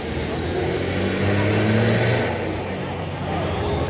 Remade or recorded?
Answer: recorded